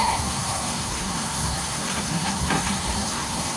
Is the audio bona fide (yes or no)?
no